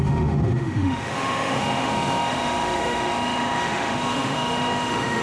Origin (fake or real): fake